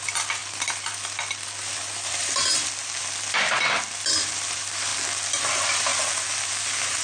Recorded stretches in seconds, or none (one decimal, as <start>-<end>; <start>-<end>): 4.9-5.4; 5.9-6.6

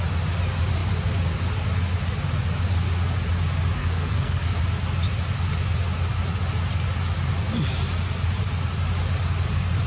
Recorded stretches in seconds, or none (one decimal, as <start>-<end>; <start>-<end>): 0.0-3.8; 4.6-9.9

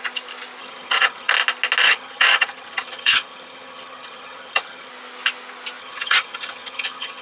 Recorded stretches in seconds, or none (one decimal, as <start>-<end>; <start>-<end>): 0.0-0.6; 1.3-1.8; 4.9-5.8

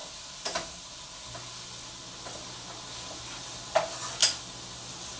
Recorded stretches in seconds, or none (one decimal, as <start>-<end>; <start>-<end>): 0.0-5.2

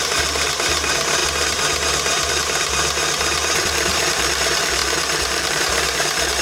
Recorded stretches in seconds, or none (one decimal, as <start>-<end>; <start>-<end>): 1.2-2.3